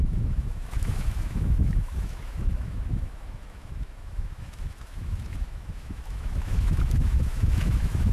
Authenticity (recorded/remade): remade